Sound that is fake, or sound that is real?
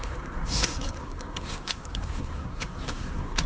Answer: fake